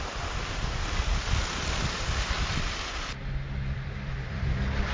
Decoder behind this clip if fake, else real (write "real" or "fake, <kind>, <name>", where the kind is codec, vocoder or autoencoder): fake, vocoder, BigVGAN v2